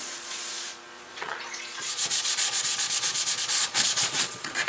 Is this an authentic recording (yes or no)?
no